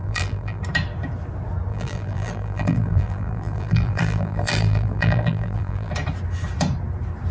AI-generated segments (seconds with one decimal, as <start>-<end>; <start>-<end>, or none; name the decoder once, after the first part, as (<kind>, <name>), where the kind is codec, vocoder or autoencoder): 0.0-0.6 (vocoder, BigVGAN v2); 1.7-5.9